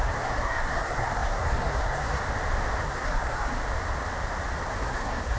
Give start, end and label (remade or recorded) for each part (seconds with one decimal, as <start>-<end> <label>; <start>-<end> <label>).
0.0-2.2 remade; 2.2-2.8 recorded; 2.8-3.6 remade; 3.6-4.7 recorded; 4.7-5.4 remade